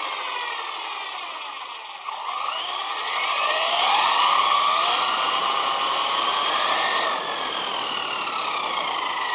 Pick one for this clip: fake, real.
real